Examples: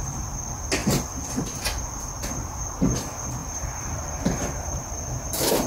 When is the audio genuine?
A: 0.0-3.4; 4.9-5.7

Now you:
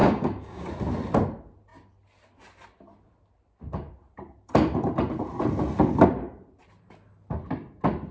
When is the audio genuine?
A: 0.7-8.1

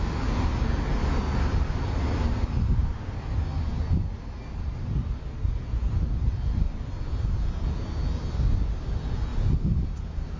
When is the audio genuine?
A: 0.0-10.4

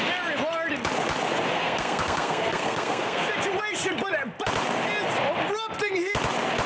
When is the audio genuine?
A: 0.0-1.5; 3.3-6.7

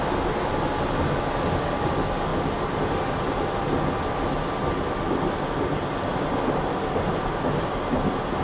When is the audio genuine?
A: 0.0-8.4

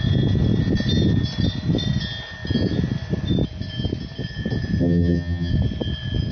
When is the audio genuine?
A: 0.0-4.8; 5.5-6.3